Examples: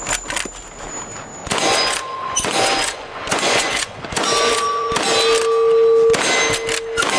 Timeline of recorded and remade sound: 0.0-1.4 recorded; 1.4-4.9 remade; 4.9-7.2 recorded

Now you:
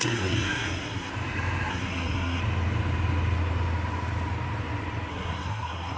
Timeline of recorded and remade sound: 0.0-1.1 remade; 1.1-1.7 recorded; 1.7-2.4 remade; 2.4-5.1 recorded; 5.1-6.0 remade

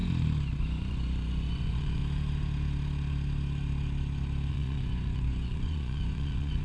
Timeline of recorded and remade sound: 0.0-0.6 recorded; 0.6-2.0 remade; 2.0-4.5 recorded; 4.5-6.6 remade

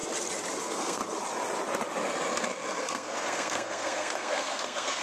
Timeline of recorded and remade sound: 0.0-0.6 recorded; 0.6-1.0 remade; 1.0-2.8 recorded; 2.8-5.0 remade